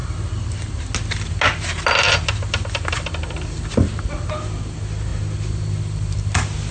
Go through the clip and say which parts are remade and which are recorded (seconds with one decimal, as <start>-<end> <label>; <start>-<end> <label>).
0.0-6.7 recorded